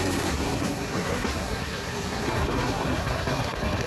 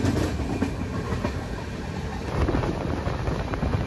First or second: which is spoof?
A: first